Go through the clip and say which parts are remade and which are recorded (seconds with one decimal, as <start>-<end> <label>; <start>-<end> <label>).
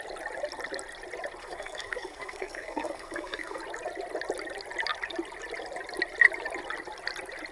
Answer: 0.0-1.4 recorded; 1.4-3.6 remade; 3.6-7.5 recorded